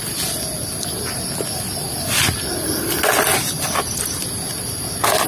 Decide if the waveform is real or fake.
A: real